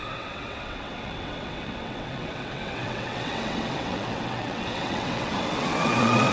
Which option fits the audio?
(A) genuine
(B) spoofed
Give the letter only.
B